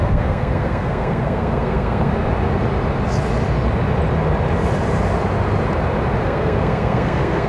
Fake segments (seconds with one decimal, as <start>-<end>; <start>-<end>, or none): 0.0-2.1; 6.2-7.5